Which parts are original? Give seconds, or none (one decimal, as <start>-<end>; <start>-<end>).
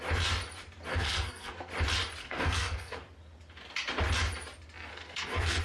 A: 0.0-0.9; 1.7-2.2; 3.0-4.9